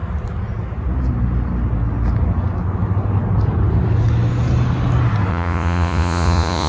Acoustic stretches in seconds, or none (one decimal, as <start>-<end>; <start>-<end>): 0.0-5.3